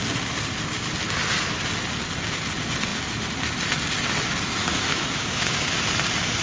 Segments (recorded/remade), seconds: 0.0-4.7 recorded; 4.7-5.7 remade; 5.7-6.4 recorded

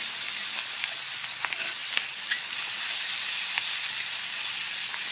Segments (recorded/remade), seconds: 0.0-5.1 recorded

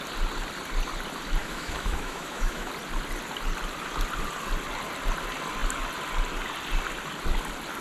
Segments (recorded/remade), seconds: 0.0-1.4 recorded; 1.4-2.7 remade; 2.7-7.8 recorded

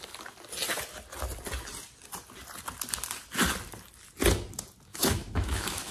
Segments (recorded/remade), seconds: 0.0-4.9 recorded; 4.9-5.9 remade

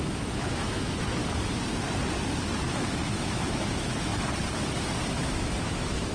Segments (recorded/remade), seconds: 0.0-1.2 remade; 1.2-2.9 recorded; 2.9-4.1 remade; 4.1-5.1 recorded; 5.1-6.1 remade

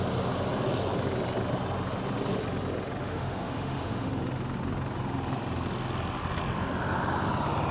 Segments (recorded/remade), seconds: 0.0-3.0 recorded; 3.0-4.1 remade; 4.1-7.7 recorded

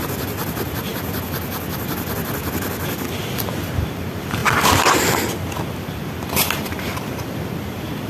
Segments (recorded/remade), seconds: 0.0-8.1 recorded